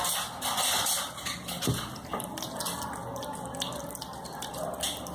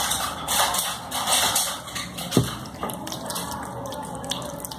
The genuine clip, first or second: first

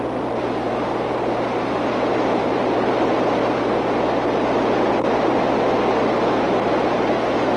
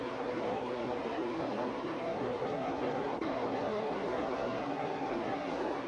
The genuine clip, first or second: first